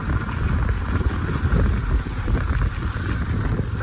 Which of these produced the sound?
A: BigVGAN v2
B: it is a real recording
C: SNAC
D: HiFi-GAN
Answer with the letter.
B